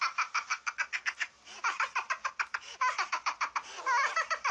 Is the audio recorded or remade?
recorded